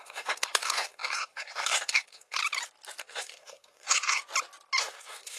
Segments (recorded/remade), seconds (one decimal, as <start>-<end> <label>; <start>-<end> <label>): 0.0-2.4 remade; 2.4-3.0 recorded; 3.0-4.2 remade; 4.2-4.8 recorded; 4.8-5.4 remade